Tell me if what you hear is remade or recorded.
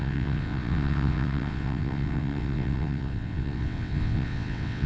remade